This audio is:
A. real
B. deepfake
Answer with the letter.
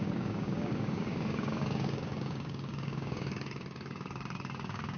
B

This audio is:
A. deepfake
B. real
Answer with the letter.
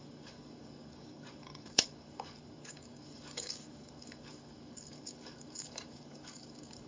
A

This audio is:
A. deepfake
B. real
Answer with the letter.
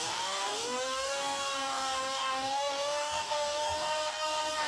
A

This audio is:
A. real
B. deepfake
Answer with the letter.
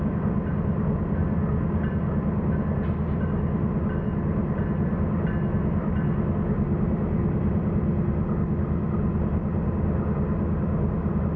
A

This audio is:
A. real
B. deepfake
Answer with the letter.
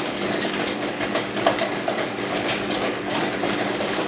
B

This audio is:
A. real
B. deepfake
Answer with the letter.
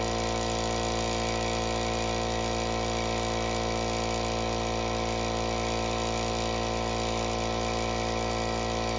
A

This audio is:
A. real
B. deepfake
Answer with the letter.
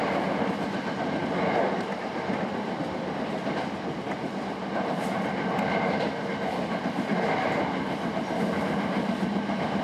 A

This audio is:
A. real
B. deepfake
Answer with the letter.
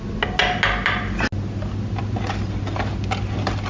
A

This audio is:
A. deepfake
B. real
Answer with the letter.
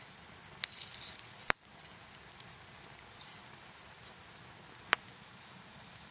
B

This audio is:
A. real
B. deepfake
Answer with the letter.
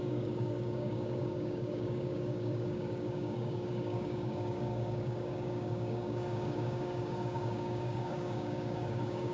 B